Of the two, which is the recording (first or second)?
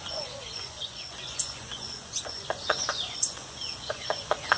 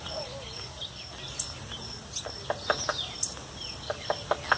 second